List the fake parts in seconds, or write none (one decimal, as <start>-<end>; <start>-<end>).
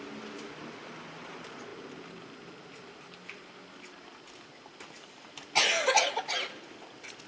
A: none